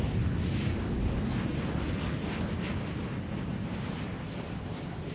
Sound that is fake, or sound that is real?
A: real